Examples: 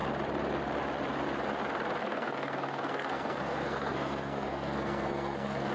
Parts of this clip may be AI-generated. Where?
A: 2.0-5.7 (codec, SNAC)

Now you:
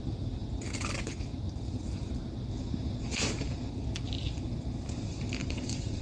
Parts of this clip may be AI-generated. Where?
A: 5.4-6.0 (vocoder, WaveNeXt)

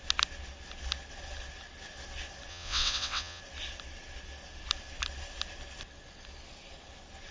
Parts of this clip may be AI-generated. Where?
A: 2.5-3.4 (vocoder, WaveNeXt)